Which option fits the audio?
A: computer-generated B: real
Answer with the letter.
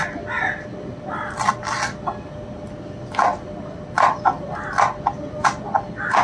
B